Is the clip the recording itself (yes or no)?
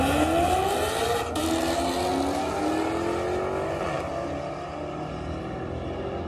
yes